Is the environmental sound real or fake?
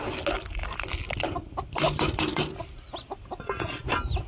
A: real